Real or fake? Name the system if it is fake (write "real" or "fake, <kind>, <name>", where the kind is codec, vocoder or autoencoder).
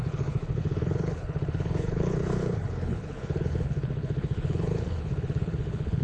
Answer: fake, codec, HILCodec